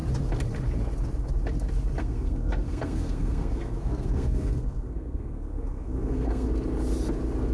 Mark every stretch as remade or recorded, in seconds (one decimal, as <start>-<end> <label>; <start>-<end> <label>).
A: 0.0-2.0 recorded; 2.0-6.5 remade; 6.5-7.5 recorded